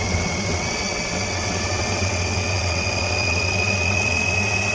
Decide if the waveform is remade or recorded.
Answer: remade